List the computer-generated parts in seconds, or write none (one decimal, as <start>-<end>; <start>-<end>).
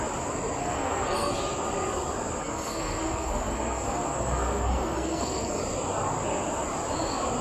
0.6-1.3; 2.4-5.6